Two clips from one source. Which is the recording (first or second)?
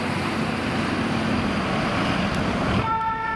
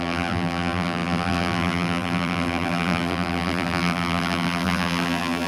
first